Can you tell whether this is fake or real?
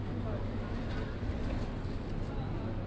real